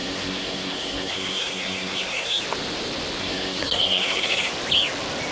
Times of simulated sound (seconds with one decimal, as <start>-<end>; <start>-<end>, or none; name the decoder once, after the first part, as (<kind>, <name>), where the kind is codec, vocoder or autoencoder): 0.0-2.4 (codec, SNAC); 3.2-4.5